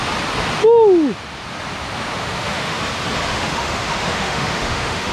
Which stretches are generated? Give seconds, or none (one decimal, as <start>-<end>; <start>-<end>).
2.1-2.8; 3.3-5.1

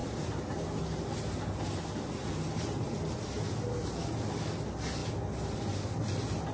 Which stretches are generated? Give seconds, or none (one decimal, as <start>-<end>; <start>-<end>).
0.0-3.9

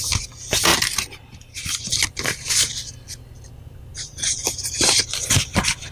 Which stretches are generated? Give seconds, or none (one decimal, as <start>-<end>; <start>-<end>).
0.7-1.8; 3.9-5.5

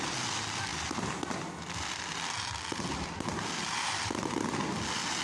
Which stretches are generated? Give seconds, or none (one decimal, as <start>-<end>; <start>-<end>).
none

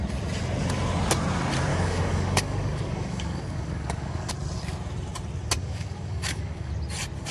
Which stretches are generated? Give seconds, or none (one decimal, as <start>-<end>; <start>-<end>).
1.7-4.3; 5.6-6.7

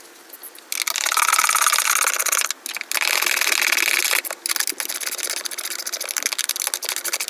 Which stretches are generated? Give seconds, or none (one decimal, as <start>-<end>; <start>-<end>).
none

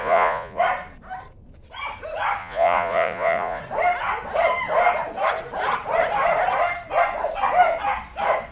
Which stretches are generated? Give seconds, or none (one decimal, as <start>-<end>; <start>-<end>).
0.0-0.6; 2.4-3.6

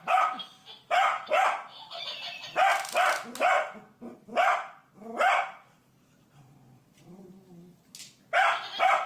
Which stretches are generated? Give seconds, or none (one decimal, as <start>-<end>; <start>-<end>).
1.1-2.0